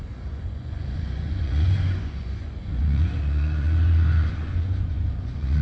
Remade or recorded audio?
remade